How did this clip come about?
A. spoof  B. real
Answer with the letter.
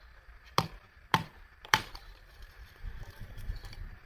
A